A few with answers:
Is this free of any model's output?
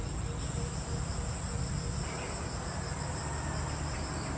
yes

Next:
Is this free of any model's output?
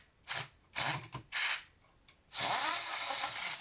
no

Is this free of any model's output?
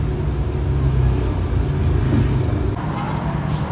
yes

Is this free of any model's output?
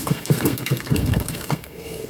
no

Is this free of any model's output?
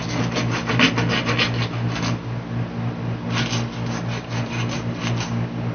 yes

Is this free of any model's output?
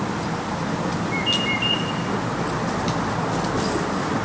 yes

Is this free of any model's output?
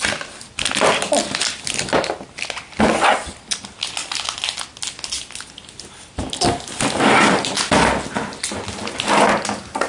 yes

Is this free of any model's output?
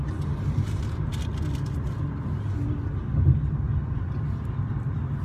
yes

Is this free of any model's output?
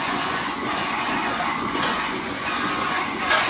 no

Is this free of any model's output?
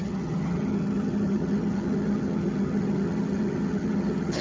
no